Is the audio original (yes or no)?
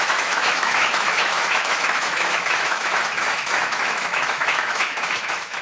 no